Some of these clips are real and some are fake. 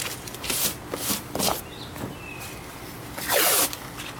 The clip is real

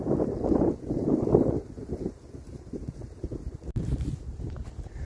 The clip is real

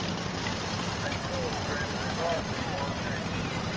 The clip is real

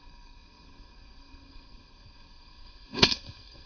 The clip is fake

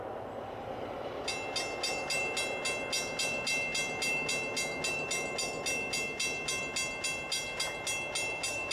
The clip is real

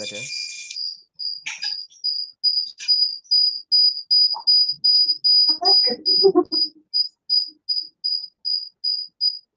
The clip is real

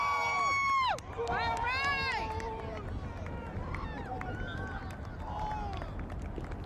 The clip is real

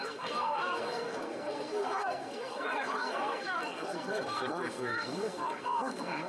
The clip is fake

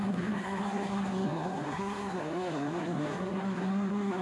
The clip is fake